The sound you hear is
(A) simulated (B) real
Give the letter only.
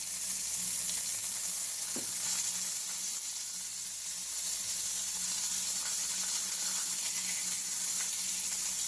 B